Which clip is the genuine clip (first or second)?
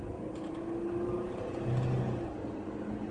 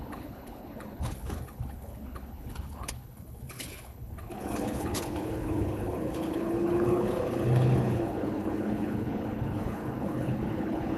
first